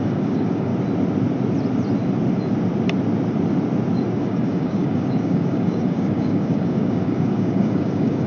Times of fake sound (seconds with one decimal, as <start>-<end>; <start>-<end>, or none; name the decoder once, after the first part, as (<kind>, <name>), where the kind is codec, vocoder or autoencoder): 0.0-0.7 (codec, DAC); 4.2-8.3